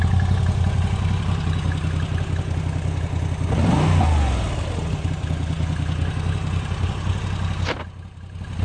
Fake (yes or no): no